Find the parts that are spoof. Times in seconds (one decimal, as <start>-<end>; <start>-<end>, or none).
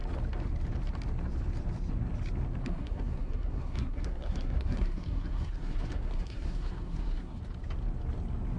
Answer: 2.6-7.4